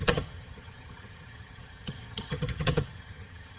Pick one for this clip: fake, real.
fake